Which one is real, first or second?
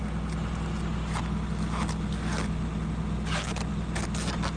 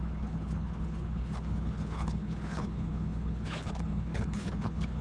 first